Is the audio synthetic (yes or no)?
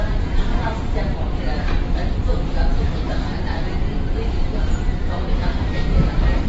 yes